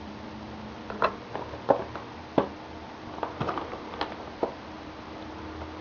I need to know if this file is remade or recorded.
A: recorded